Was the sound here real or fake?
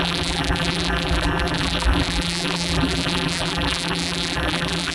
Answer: fake